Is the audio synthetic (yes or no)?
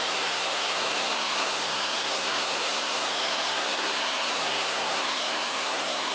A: yes